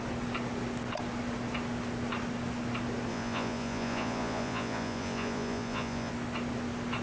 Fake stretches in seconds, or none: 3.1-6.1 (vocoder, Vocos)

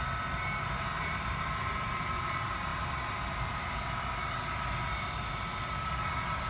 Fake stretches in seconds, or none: 2.7-3.7 (vocoder, BigVGAN v2)

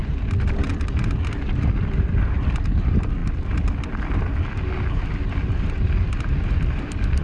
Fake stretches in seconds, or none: none

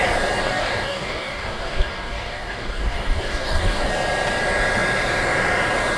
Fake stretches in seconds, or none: 0.4-3.9 (codec, DAC)

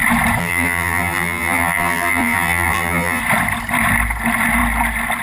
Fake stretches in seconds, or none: 0.4-3.2 (vocoder, BigVGAN v2)

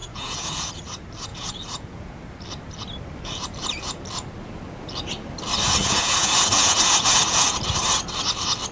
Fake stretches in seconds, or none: 0.0-0.7 (vocoder, Vocos); 1.3-2.2; 5.8-7.6

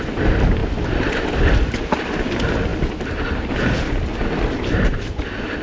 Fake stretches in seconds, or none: none